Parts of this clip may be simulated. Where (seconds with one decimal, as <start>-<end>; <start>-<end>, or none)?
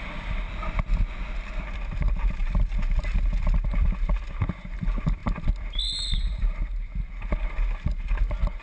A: none